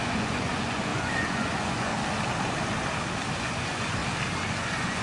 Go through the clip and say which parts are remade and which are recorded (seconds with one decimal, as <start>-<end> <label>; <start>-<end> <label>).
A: 0.0-1.9 remade; 1.9-3.3 recorded; 3.3-4.0 remade; 4.0-4.5 recorded; 4.5-5.0 remade